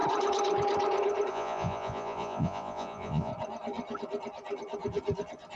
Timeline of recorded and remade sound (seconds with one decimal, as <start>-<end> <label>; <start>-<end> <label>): 0.0-1.3 recorded; 1.3-3.3 remade; 3.3-5.6 recorded